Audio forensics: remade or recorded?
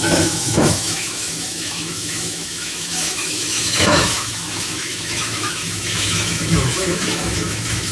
remade